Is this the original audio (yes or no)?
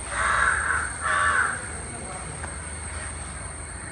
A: yes